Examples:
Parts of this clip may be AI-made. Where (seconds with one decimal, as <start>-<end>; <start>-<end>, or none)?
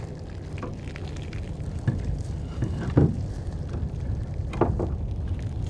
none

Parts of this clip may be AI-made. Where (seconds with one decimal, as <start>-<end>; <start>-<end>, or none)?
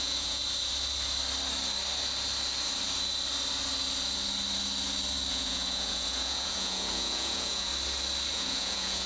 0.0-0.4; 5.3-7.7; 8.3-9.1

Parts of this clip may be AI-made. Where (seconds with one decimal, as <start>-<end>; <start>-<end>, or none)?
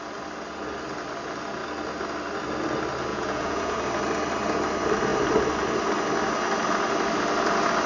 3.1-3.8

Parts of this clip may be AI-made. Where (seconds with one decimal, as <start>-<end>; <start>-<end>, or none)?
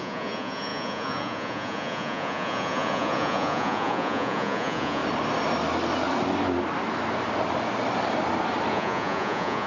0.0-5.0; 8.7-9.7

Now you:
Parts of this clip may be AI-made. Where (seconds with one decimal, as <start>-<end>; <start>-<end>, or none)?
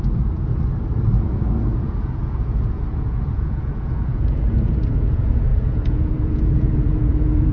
0.0-0.5; 1.1-7.5